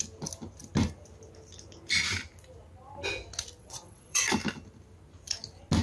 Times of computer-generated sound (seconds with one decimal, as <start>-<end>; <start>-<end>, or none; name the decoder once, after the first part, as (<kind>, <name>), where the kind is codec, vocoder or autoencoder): 3.6-4.2 (vocoder, WaveNeXt)